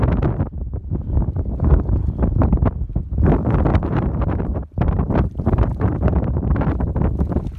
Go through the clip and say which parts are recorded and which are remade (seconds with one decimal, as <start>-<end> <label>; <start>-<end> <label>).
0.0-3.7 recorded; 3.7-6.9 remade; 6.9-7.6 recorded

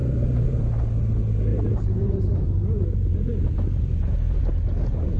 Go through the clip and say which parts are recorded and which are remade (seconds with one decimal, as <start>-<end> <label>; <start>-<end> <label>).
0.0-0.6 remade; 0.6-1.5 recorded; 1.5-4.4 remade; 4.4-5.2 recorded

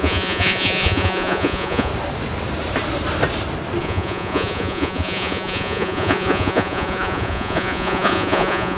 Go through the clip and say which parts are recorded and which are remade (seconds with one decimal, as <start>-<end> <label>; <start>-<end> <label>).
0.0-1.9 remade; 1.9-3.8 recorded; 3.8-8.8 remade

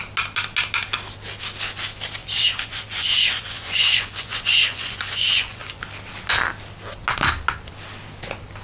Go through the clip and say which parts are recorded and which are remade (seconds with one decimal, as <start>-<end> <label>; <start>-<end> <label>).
0.0-2.2 recorded; 2.2-5.8 remade; 5.8-8.6 recorded

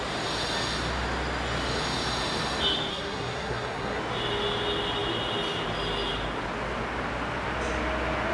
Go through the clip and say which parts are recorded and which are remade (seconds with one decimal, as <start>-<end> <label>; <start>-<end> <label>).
0.0-2.9 recorded; 2.9-4.0 remade; 4.0-8.3 recorded